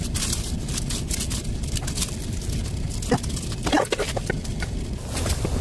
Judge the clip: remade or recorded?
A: recorded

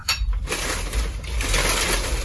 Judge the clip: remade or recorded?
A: remade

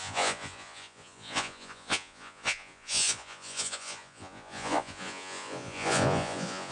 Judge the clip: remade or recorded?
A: remade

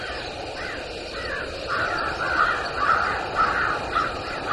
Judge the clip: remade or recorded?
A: recorded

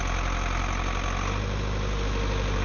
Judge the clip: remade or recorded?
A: recorded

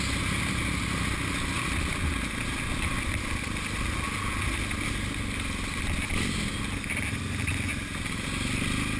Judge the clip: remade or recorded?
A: recorded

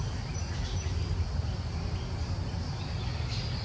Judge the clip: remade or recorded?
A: recorded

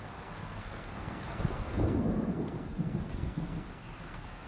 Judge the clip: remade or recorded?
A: remade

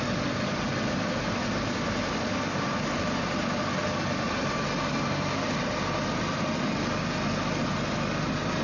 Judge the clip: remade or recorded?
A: recorded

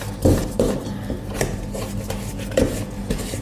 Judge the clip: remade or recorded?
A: recorded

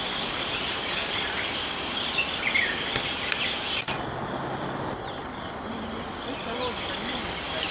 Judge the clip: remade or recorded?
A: recorded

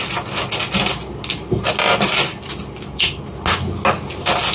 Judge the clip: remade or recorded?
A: recorded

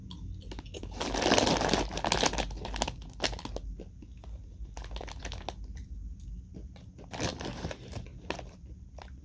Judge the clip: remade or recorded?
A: recorded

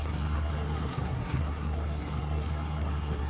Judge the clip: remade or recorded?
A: remade